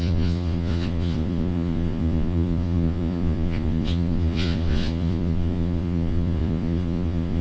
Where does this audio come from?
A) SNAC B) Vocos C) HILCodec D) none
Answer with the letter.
B